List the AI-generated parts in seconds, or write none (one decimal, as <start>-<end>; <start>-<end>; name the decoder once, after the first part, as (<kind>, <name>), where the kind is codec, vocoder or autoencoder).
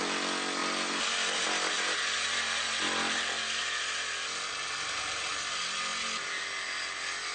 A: none